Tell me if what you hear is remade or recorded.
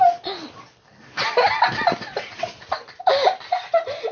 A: recorded